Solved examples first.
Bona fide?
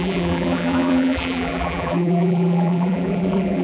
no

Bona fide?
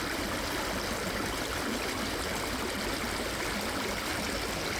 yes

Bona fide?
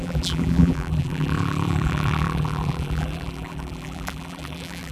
no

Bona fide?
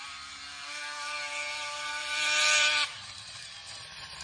no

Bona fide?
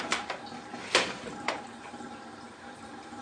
no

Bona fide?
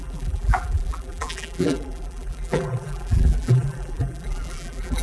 no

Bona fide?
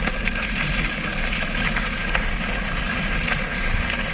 yes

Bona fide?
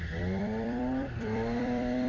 no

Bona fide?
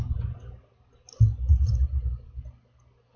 yes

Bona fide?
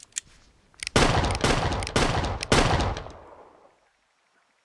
yes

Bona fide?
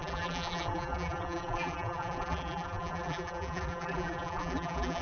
no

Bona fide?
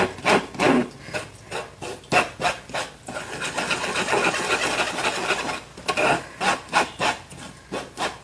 yes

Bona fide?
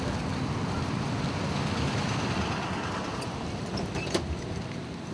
yes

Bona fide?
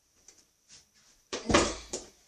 no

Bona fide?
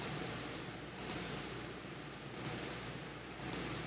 no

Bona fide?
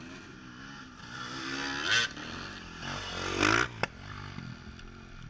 yes